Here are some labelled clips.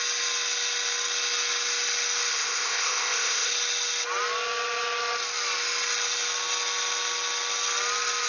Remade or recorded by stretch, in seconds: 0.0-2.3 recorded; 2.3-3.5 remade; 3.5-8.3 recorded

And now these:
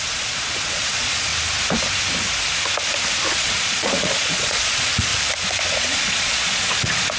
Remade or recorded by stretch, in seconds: 0.0-1.3 remade; 1.3-3.3 recorded; 3.3-5.1 remade; 5.1-5.7 recorded; 5.7-7.2 remade

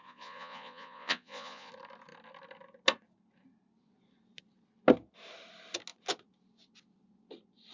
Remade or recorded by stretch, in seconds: 0.0-1.7 remade; 1.7-7.7 recorded